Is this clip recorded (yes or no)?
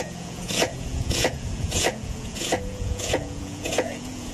no